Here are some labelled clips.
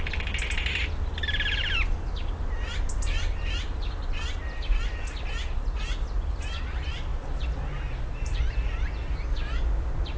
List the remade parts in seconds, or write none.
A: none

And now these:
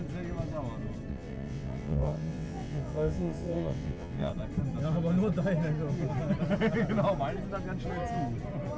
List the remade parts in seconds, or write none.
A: 1.1-4.3 (vocoder, WaveNeXt)

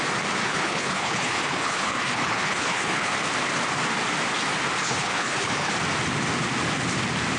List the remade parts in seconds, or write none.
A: 0.4-3.1 (codec, HILCodec); 4.8-5.7

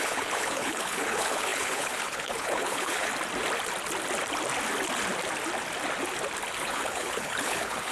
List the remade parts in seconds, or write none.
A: 0.0-3.1 (codec, HILCodec); 6.6-7.9

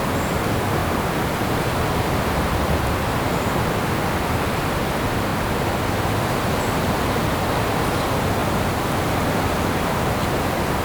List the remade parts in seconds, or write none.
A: none

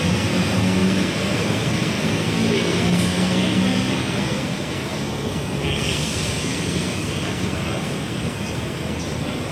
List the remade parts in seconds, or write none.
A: 0.0-9.5 (codec, SNAC)

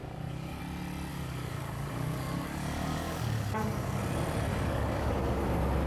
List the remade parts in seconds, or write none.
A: 0.0-0.6 (codec, DAC); 1.1-4.0; 4.5-5.1